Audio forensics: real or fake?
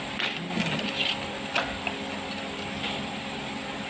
real